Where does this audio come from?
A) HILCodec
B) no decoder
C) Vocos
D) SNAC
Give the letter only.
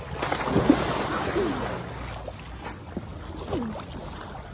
B